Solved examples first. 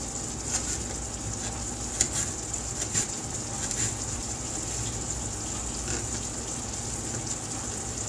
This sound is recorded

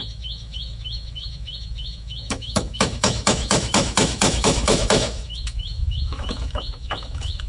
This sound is remade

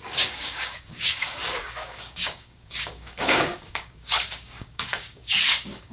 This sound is remade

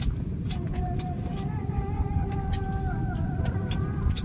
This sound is remade